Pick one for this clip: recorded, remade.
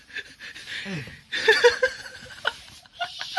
remade